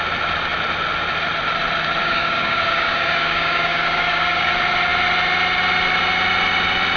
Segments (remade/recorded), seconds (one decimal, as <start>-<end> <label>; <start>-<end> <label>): 0.0-2.0 recorded; 2.0-4.5 remade; 4.5-7.0 recorded